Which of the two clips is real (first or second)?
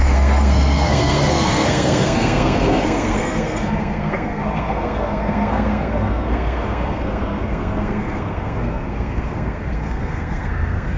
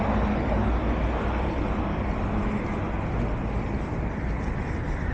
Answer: second